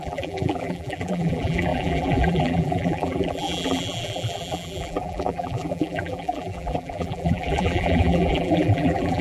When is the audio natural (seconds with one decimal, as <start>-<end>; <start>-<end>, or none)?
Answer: none